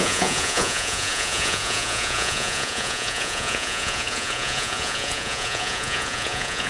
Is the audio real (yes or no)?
no